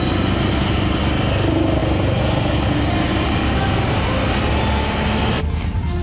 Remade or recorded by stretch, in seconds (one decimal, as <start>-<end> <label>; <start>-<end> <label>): 0.0-6.0 recorded